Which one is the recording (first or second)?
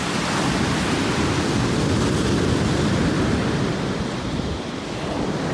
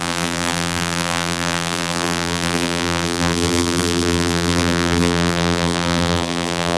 first